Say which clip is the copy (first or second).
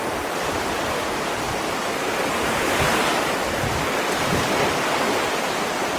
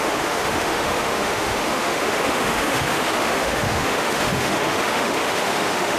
second